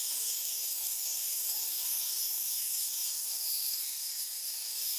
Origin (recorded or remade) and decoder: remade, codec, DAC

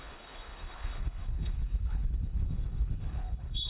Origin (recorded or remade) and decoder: remade, codec, HILCodec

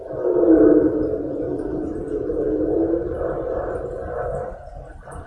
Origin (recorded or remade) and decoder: recorded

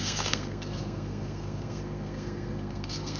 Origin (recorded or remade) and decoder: remade, codec, SNAC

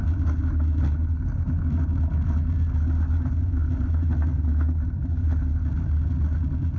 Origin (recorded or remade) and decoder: recorded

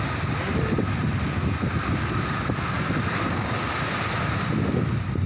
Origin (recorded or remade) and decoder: recorded